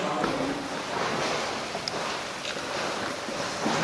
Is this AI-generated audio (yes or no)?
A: no